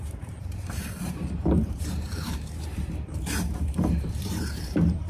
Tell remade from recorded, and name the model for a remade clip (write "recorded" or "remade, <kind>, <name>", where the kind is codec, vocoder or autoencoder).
remade, vocoder, BigVGAN v2